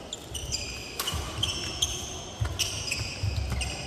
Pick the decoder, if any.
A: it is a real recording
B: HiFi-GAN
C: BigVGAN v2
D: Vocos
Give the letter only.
A